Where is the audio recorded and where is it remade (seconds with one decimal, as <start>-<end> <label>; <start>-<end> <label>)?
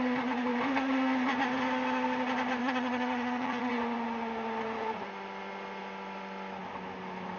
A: 0.0-2.6 recorded; 2.6-3.7 remade; 3.7-7.4 recorded